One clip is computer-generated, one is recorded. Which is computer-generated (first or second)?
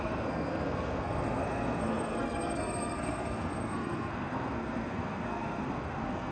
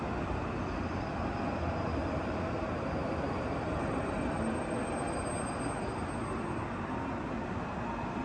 first